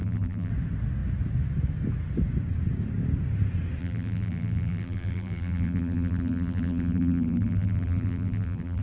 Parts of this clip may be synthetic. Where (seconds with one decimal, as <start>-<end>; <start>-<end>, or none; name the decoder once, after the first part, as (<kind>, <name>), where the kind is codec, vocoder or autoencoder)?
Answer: 0.0-0.5 (vocoder, BigVGAN v2); 3.8-8.8